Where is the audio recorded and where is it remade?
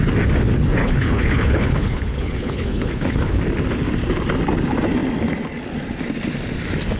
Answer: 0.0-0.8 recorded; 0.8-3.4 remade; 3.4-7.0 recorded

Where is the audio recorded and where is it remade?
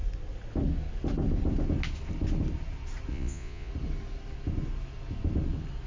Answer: 0.0-3.1 recorded; 3.1-3.7 remade; 3.7-5.9 recorded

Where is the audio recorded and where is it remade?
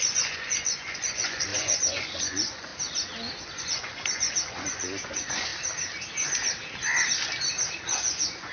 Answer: 0.0-2.7 remade; 2.7-3.6 recorded; 3.6-5.5 remade; 5.5-7.8 recorded; 7.8-8.5 remade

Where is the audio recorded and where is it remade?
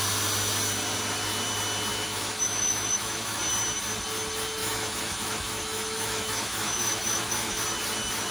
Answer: 0.0-1.9 recorded; 1.9-3.4 remade; 3.4-4.6 recorded; 4.6-7.6 remade; 7.6-8.3 recorded